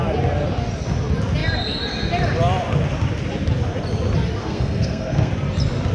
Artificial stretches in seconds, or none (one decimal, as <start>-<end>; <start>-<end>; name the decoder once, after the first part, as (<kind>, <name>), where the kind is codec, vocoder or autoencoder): 4.4-5.3 (codec, SNAC)